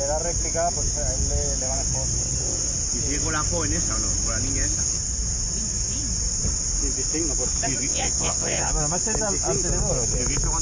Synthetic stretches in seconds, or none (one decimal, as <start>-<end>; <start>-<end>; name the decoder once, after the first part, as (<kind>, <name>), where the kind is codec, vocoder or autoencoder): 7.9-8.7 (vocoder, WaveNeXt)